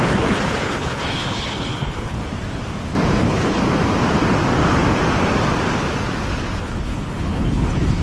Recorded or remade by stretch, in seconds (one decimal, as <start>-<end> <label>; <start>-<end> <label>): 0.0-2.2 remade; 2.2-3.2 recorded; 3.2-3.6 remade; 3.6-6.6 recorded; 6.6-8.0 remade

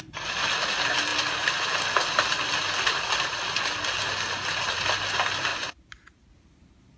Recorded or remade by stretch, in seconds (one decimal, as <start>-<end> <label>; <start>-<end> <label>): 0.0-7.0 recorded